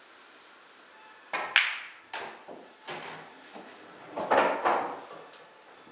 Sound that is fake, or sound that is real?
real